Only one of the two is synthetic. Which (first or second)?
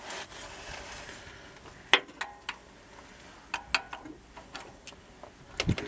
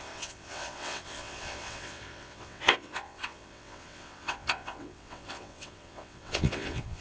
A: second